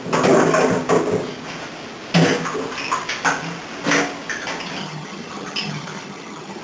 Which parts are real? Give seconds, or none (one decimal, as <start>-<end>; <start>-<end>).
0.0-4.8